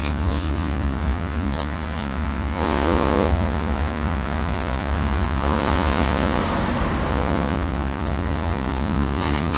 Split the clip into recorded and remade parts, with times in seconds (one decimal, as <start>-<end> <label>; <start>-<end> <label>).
0.0-6.4 remade; 6.4-7.1 recorded; 7.1-9.6 remade